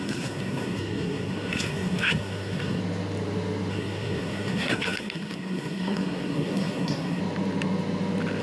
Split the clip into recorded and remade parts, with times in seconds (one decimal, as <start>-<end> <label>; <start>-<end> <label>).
0.0-2.8 remade; 2.8-3.7 recorded; 3.7-7.2 remade; 7.2-8.4 recorded